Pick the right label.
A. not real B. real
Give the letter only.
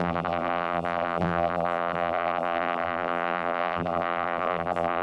A